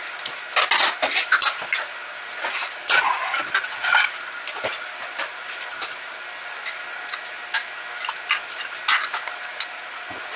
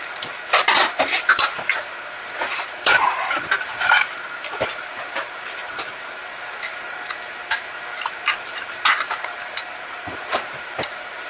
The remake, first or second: second